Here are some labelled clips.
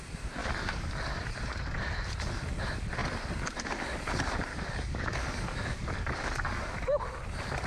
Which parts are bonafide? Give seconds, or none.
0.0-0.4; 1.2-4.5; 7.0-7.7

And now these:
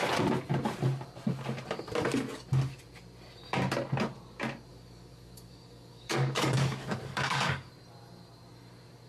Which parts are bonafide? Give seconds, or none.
0.0-4.7; 7.7-9.1